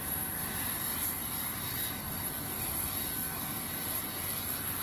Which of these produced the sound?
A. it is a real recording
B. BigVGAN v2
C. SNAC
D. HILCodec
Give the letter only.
A